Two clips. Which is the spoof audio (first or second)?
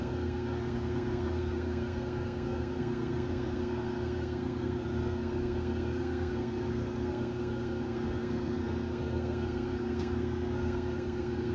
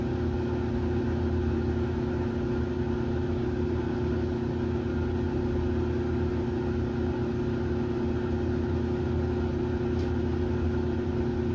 first